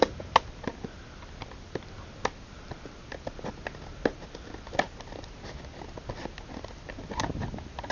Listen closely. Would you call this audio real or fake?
real